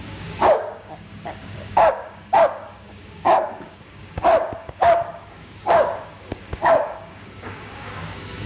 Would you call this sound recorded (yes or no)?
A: no